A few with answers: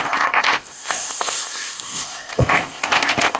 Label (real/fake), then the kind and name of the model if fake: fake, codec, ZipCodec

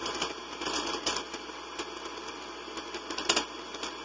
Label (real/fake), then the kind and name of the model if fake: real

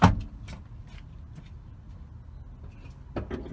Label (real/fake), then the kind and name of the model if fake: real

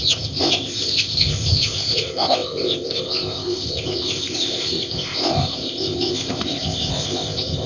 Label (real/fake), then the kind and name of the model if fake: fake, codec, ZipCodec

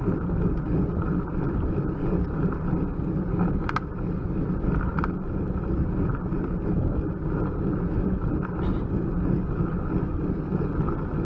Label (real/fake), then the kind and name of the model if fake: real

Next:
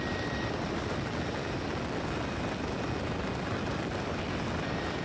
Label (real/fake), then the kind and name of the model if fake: real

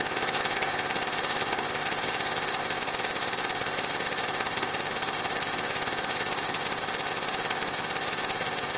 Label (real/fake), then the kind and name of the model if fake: fake, codec, ZipCodec